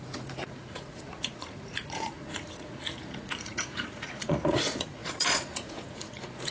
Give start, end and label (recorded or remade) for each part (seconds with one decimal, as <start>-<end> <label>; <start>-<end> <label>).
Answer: 0.0-6.5 remade